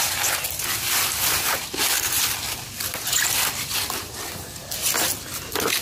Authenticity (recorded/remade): recorded